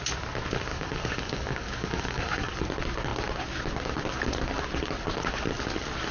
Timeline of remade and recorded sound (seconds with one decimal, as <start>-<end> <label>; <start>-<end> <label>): 0.0-0.7 recorded; 0.7-2.5 remade; 2.5-6.1 recorded